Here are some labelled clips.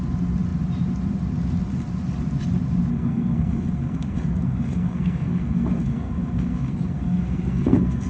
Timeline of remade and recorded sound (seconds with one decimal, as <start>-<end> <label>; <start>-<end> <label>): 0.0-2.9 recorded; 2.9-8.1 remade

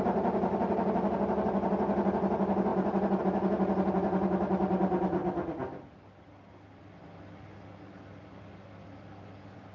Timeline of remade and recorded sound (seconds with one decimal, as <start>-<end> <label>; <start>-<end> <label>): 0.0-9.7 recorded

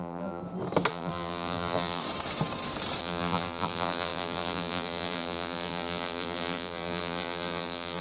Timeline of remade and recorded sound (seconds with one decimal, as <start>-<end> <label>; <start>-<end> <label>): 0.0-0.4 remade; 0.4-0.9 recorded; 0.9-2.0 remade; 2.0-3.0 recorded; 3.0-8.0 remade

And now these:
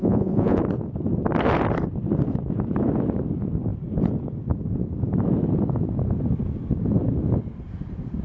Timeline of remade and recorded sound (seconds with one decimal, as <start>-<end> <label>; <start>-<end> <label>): 0.0-0.6 remade; 0.6-8.2 recorded